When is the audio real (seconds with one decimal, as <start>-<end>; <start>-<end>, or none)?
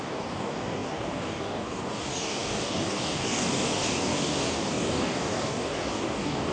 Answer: none